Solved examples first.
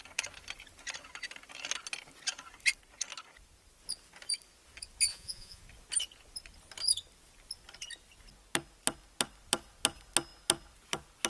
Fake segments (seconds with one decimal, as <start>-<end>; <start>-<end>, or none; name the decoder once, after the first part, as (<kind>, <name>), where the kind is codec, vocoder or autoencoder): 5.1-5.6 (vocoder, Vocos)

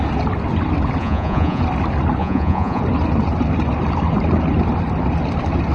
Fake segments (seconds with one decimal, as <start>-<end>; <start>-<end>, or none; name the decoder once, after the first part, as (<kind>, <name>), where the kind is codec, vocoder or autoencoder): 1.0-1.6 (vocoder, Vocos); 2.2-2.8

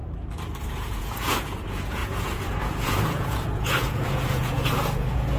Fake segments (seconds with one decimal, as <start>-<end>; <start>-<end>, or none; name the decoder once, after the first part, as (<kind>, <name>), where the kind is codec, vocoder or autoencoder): 0.6-5.4 (vocoder, Vocos)

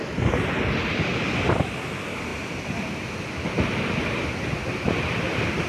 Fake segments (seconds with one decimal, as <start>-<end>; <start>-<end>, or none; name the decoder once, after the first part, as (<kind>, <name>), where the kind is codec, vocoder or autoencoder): 2.3-3.0 (vocoder, BigVGAN v2)